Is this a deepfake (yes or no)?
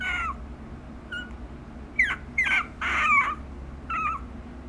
no